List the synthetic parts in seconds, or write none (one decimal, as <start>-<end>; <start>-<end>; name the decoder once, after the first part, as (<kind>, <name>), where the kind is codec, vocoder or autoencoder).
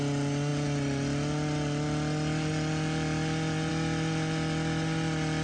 none